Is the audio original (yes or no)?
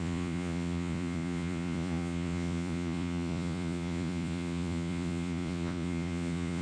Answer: no